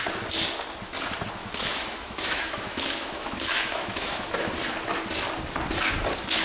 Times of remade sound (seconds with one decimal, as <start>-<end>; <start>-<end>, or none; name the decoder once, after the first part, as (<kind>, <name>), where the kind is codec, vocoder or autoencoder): 1.4-4.5 (autoencoder, DAC-VAE)